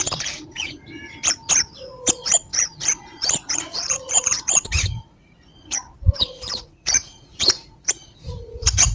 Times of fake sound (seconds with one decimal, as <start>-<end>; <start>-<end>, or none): 0.0-0.8; 1.6-8.9